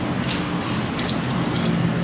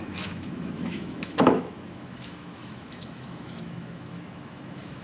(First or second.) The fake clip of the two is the second